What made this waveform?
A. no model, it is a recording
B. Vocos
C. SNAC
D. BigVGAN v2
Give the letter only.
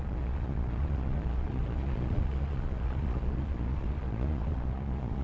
B